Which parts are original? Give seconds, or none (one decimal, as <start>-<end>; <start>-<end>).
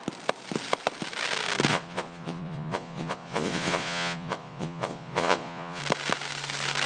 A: 0.0-1.7; 5.8-6.9